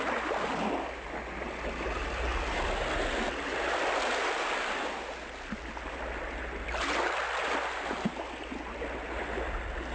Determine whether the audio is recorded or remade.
recorded